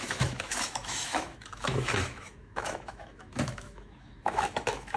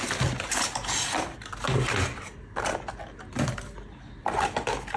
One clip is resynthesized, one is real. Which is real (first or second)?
second